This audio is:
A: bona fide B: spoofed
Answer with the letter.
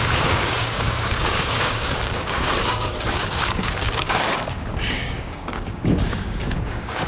B